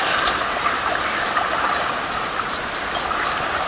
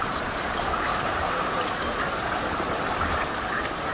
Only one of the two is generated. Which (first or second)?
second